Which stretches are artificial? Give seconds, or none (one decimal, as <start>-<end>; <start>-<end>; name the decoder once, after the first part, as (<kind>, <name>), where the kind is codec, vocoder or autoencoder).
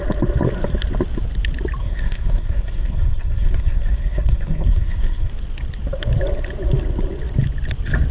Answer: 1.8-5.3 (codec, SNAC)